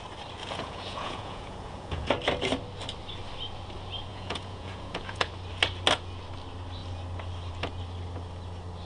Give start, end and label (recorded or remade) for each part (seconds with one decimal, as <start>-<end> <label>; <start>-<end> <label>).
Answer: 0.0-0.4 recorded; 0.4-2.1 remade; 2.1-4.1 recorded; 4.1-5.3 remade; 5.3-8.9 recorded